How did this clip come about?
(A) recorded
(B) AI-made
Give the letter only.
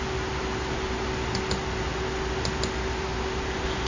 A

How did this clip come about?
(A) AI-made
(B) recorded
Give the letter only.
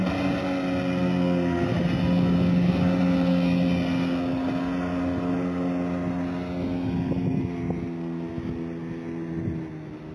B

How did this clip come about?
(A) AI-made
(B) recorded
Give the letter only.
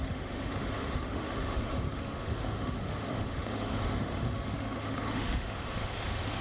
A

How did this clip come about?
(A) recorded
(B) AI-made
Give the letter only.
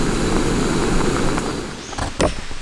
A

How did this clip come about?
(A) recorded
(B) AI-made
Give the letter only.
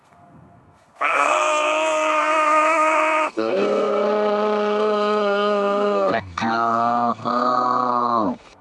B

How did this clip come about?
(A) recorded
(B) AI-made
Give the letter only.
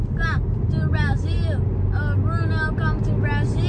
A